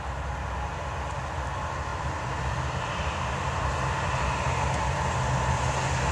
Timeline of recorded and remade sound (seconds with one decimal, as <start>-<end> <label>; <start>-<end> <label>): 0.0-1.9 recorded; 1.9-4.2 remade; 4.2-6.1 recorded